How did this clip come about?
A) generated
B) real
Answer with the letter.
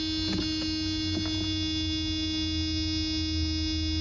B